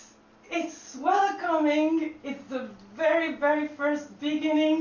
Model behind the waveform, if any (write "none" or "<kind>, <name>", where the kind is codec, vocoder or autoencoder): none